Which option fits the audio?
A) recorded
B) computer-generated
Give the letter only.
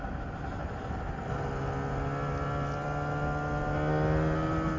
A